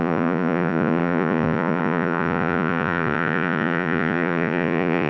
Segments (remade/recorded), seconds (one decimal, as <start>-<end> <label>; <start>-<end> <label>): 0.0-5.1 remade